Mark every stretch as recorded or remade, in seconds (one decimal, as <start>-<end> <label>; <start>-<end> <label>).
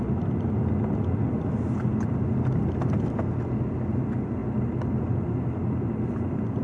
0.0-6.6 recorded